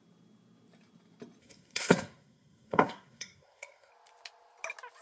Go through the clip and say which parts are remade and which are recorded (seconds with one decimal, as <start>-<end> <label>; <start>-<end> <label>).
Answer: 0.0-1.4 recorded; 1.4-3.9 remade; 3.9-5.0 recorded

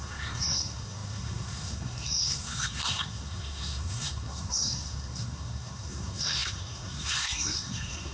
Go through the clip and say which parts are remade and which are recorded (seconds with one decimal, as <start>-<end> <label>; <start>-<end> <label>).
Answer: 0.0-8.1 remade

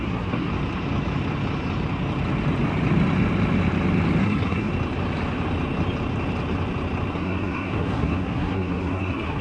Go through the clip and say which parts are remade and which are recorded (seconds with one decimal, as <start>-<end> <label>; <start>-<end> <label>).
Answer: 0.0-0.5 remade; 0.5-4.2 recorded; 4.2-4.7 remade; 4.7-7.1 recorded; 7.1-9.4 remade

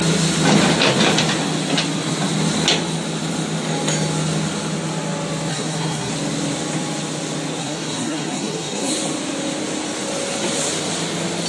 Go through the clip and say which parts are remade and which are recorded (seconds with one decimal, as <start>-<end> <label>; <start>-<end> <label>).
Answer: 0.0-5.5 recorded; 5.5-6.1 remade; 6.1-7.6 recorded; 7.6-8.9 remade; 8.9-11.5 recorded

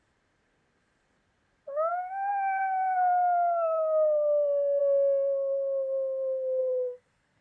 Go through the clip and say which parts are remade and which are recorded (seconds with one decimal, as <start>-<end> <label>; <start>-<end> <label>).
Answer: 0.0-1.9 recorded; 1.9-4.8 remade; 4.8-6.6 recorded; 6.6-7.4 remade

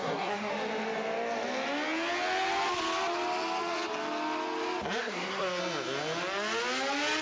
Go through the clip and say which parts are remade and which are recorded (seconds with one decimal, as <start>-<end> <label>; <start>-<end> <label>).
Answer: 0.0-0.5 remade; 0.5-5.0 recorded; 5.0-5.6 remade; 5.6-7.2 recorded

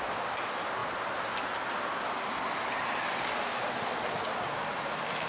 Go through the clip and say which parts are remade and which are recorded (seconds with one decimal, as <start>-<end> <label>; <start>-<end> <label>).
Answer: 0.0-5.3 recorded

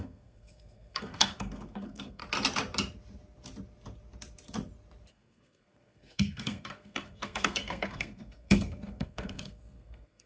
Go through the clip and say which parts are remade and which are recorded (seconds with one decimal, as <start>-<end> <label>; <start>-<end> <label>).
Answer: 0.0-2.2 remade; 2.2-5.1 recorded; 5.1-10.3 remade